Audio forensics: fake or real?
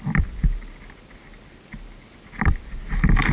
real